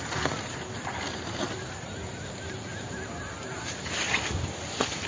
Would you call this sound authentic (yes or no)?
yes